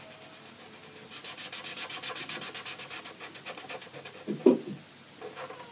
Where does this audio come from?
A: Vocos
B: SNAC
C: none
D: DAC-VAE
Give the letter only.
C